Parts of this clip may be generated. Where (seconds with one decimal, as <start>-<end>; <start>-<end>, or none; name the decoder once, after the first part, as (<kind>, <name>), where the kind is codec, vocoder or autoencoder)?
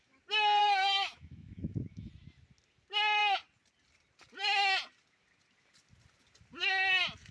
0.6-2.1 (autoencoder, DAC-VAE)